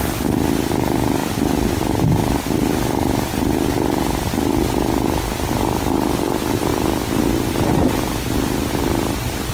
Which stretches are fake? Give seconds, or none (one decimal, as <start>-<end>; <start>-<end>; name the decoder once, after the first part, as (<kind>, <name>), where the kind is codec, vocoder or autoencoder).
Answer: none